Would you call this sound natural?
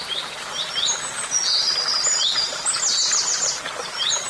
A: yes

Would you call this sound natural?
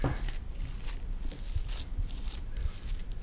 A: yes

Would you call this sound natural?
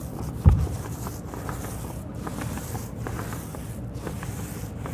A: no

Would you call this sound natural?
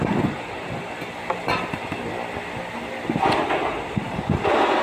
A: yes